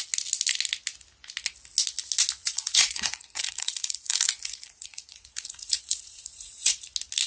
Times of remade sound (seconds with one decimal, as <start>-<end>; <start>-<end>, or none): 2.4-6.8